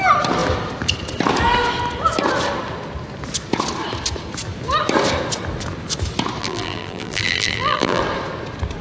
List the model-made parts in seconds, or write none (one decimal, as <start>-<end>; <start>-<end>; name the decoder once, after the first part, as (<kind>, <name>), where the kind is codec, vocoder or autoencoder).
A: 6.4-8.0 (vocoder, BigVGAN v2)

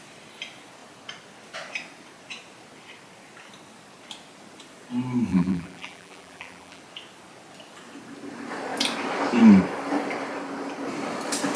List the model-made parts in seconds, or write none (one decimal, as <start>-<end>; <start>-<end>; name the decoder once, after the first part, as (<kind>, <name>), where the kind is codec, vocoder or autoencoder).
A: 5.3-6.8 (vocoder, BigVGAN v2)

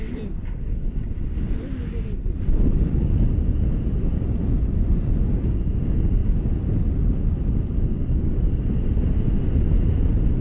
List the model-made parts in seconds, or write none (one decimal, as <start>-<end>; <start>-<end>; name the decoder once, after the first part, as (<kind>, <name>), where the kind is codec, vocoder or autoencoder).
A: 0.0-6.2 (vocoder, BigVGAN v2); 8.1-10.4

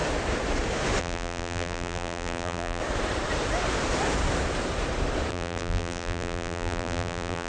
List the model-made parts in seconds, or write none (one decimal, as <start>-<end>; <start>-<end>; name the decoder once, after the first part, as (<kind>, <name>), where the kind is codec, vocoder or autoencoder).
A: 1.0-2.8 (vocoder, BigVGAN v2); 5.3-7.5

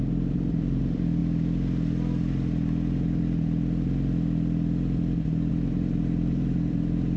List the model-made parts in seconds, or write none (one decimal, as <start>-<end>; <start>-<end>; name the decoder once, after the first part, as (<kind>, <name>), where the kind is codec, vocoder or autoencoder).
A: 0.0-1.2 (vocoder, BigVGAN v2); 5.5-7.2